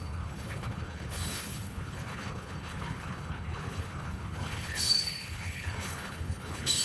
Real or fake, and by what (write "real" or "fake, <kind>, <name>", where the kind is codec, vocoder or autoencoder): fake, codec, HILCodec